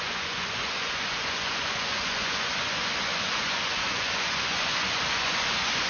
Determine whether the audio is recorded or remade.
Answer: remade